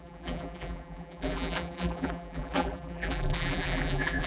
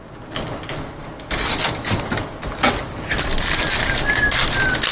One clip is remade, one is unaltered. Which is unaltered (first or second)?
second